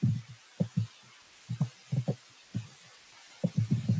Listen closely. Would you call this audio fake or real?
real